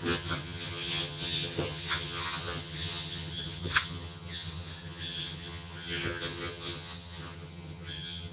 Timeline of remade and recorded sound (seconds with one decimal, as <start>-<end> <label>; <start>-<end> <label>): 0.0-8.3 remade